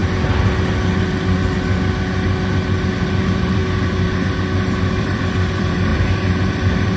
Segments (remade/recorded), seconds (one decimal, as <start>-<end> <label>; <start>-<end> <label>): 0.0-3.2 recorded; 3.2-3.6 remade; 3.6-5.0 recorded; 5.0-5.9 remade; 5.9-6.5 recorded; 6.5-7.0 remade